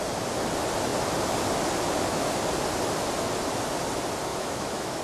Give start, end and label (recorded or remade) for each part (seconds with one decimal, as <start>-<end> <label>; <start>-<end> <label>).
0.0-4.3 recorded; 4.3-5.0 remade

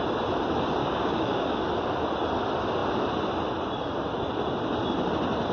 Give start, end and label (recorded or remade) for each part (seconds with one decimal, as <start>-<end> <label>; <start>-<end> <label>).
0.0-0.8 recorded; 0.8-1.6 remade; 1.6-5.5 recorded

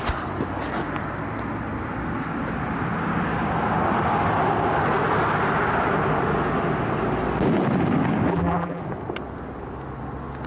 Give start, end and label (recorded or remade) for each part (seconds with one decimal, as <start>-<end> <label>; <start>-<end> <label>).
0.0-8.3 recorded; 8.3-8.8 remade; 8.8-10.5 recorded

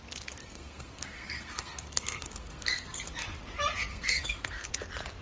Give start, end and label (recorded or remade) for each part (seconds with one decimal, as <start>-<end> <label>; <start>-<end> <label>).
0.0-0.4 recorded; 0.4-3.1 remade; 3.1-3.9 recorded; 3.9-4.7 remade; 4.7-5.2 recorded